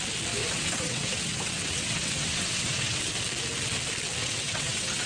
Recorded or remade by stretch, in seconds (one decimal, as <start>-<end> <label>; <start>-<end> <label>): 0.0-0.4 recorded; 0.4-3.1 remade; 3.1-4.2 recorded; 4.2-5.1 remade